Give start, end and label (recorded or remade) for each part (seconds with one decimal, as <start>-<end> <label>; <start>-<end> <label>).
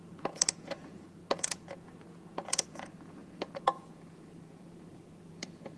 0.0-5.8 remade